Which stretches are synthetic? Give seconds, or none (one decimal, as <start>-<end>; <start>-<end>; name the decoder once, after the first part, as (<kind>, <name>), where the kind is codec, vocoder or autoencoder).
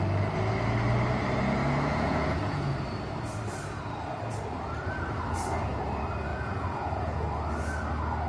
1.9-2.7 (vocoder, Vocos); 6.3-7.3